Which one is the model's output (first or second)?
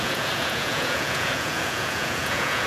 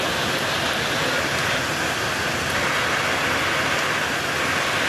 first